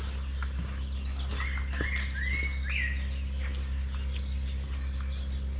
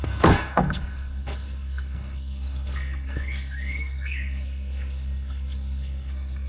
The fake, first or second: second